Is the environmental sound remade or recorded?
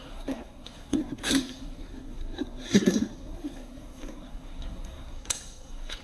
remade